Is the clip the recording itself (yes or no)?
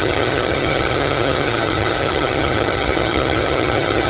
no